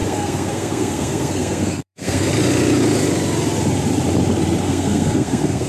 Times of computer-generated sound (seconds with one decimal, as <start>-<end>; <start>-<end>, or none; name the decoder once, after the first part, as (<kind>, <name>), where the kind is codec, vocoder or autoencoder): 0.0-2.3 (codec, SNAC); 4.6-5.7